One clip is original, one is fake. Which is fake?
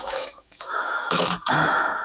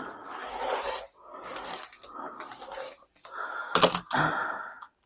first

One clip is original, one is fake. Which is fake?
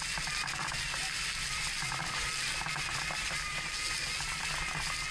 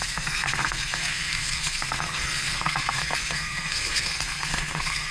second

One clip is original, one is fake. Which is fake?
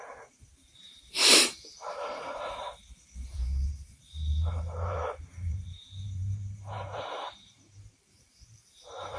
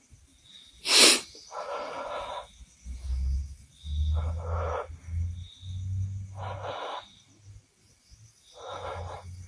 first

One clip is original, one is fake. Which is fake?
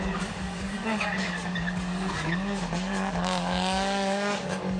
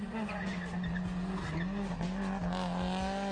first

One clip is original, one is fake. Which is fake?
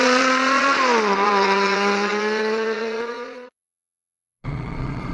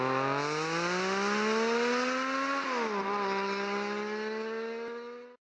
first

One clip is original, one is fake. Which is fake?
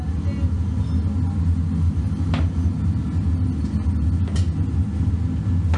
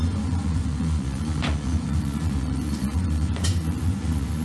second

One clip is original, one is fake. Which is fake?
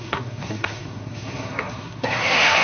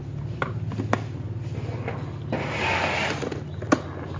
first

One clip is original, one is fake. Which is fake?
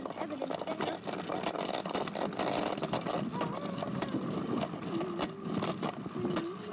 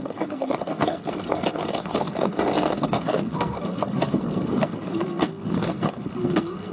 second